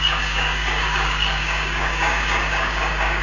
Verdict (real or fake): fake